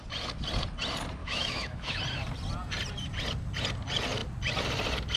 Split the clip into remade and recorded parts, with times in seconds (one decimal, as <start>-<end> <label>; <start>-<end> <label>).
0.0-1.2 recorded; 1.2-2.0 remade; 2.0-5.2 recorded